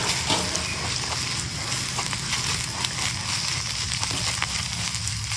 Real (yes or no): yes